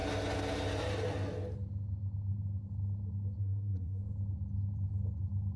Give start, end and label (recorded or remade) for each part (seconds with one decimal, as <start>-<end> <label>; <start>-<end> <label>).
0.0-3.4 recorded; 3.4-4.0 remade; 4.0-5.6 recorded